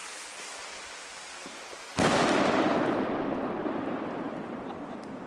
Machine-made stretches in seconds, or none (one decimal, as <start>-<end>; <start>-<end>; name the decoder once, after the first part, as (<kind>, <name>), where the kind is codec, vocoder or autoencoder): 3.6-5.3 (vocoder, BigVGAN v2)